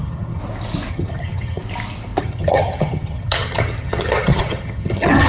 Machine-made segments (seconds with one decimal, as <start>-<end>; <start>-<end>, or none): 0.0-0.4; 0.9-1.6; 2.2-5.3